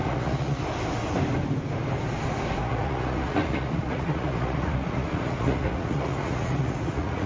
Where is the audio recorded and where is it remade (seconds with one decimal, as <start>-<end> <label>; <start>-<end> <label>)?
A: 0.0-0.6 remade; 0.6-2.6 recorded; 2.6-7.3 remade